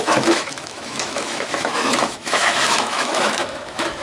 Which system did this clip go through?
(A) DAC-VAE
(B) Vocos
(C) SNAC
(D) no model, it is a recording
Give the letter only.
A